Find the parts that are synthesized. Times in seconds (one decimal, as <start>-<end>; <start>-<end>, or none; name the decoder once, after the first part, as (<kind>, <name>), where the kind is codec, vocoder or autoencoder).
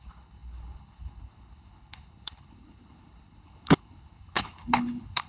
0.0-5.3 (codec, HILCodec)